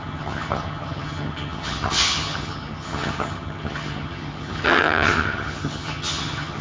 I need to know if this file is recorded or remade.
remade